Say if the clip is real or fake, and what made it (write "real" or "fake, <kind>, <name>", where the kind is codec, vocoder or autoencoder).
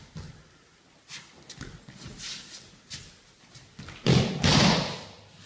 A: real